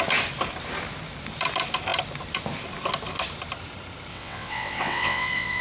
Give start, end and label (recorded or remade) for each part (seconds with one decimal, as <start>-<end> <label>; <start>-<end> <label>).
0.0-4.1 recorded; 4.1-5.6 remade